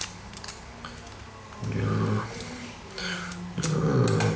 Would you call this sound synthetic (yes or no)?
no